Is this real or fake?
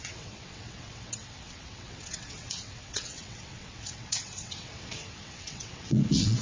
fake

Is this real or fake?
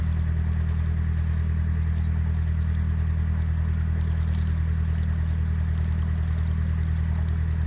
real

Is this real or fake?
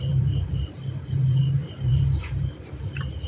fake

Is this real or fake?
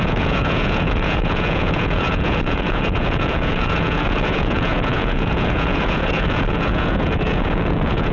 fake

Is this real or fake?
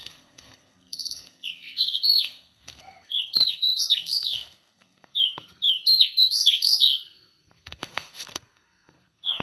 fake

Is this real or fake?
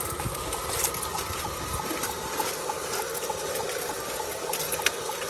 real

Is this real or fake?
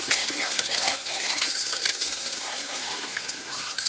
fake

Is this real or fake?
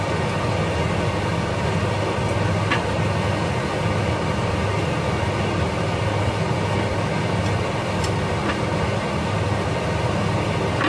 real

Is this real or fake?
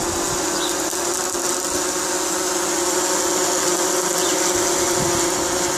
real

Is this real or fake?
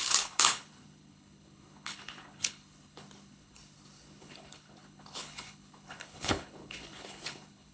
fake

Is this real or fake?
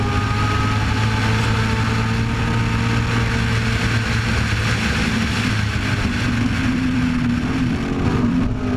real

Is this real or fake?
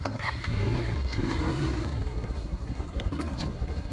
fake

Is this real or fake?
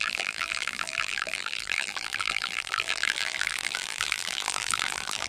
fake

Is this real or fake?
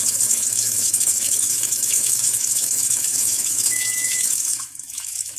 fake